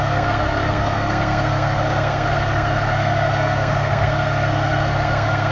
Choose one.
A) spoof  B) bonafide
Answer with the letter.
A